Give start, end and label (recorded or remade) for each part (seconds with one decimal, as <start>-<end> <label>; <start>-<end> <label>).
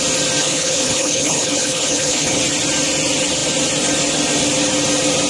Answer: 0.0-0.4 recorded; 0.4-2.4 remade; 2.4-5.3 recorded